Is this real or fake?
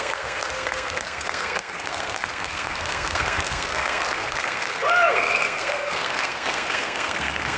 fake